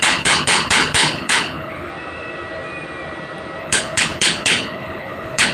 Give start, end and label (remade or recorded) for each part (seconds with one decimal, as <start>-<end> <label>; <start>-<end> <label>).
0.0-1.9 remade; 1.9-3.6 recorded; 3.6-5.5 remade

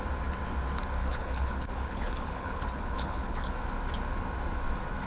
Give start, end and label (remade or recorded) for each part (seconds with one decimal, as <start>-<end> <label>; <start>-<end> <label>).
0.0-1.0 recorded; 1.0-3.5 remade; 3.5-5.1 recorded

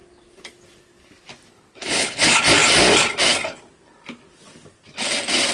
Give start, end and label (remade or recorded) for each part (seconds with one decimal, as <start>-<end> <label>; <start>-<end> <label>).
0.0-1.8 recorded; 1.8-2.4 remade; 2.4-5.5 recorded

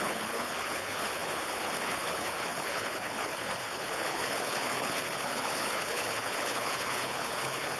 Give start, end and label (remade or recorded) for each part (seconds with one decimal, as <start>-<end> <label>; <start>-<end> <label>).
0.0-7.8 remade

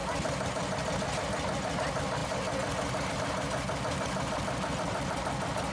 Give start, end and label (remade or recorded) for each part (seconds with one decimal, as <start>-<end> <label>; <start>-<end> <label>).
0.0-5.7 recorded